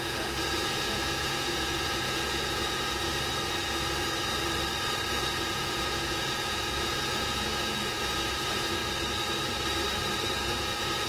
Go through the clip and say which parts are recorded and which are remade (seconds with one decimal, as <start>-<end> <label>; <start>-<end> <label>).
0.0-3.1 remade; 3.1-5.1 recorded; 5.1-8.8 remade; 8.8-10.4 recorded; 10.4-11.1 remade